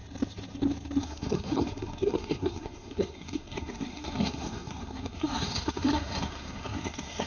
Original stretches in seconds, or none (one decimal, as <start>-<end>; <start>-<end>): 0.0-1.0